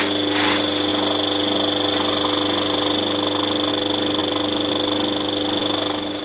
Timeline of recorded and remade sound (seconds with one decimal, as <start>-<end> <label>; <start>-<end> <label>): 0.0-5.6 recorded; 5.6-6.2 remade